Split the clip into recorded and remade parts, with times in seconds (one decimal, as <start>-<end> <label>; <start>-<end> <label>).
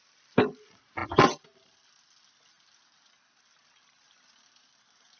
0.0-5.2 recorded